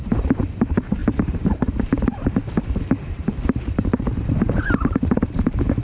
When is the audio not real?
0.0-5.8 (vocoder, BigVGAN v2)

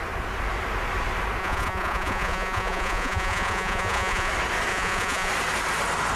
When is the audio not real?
1.4-4.3 (vocoder, Vocos); 4.7-5.3

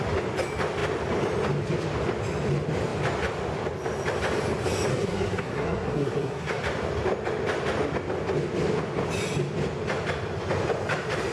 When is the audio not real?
4.9-6.6 (codec, SNAC)

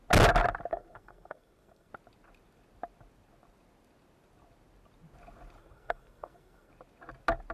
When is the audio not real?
0.7-1.9 (codec, SNAC); 5.6-6.7

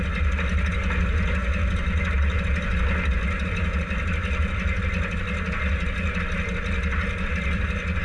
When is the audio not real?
none

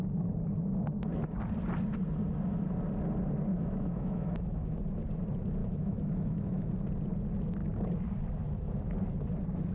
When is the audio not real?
3.5-4.8 (autoencoder, DAC-VAE); 5.6-6.7

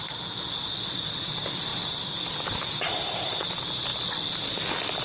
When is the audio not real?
none

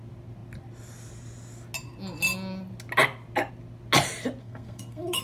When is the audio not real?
4.4-5.2 (codec, SNAC)